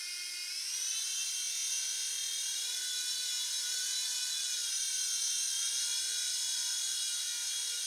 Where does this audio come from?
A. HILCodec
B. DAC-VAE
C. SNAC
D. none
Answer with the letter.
D